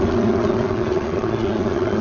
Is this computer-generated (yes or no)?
yes